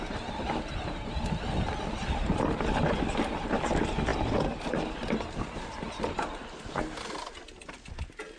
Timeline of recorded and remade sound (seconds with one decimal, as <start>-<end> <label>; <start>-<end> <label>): 0.0-8.4 recorded